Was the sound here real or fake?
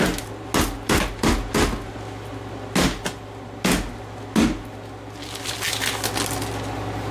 real